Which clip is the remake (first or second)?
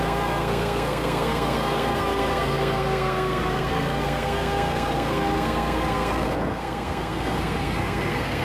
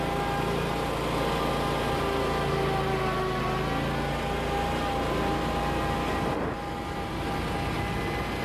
first